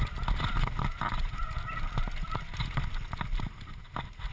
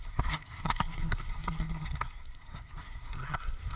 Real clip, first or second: first